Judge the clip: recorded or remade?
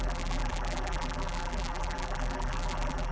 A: remade